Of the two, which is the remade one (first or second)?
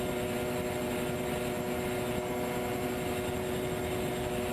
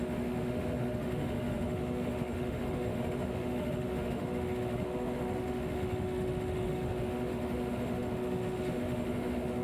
second